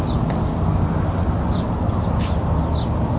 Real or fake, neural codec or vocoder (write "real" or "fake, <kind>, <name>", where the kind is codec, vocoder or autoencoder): real